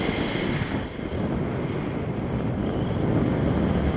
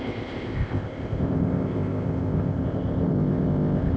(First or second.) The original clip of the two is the first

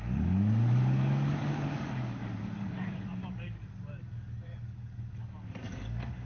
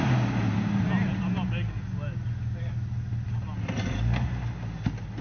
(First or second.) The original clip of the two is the second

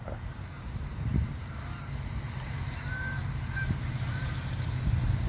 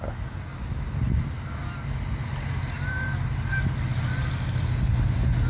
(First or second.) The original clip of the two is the second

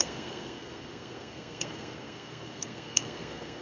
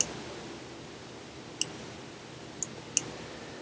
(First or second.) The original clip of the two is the second